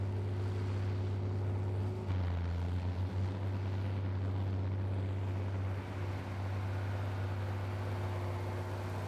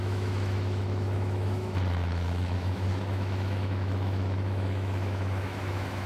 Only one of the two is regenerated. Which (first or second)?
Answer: second